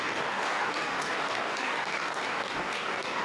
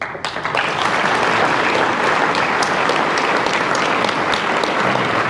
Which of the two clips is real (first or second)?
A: second